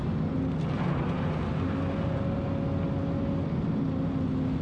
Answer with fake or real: real